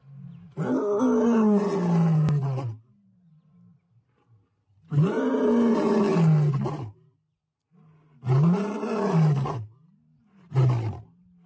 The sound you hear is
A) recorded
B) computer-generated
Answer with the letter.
A